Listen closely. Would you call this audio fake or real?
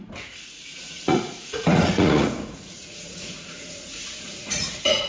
fake